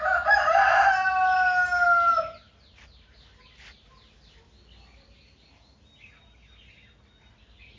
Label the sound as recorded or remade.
recorded